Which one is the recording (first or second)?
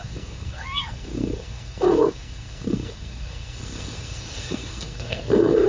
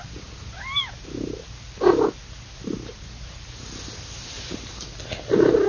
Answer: second